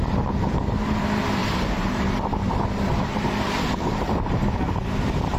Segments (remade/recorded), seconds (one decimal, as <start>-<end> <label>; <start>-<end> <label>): 0.0-1.4 recorded; 1.4-4.3 remade; 4.3-5.4 recorded